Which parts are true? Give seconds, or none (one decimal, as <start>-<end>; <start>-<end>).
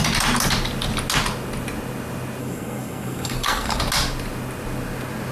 0.0-2.4; 3.8-5.3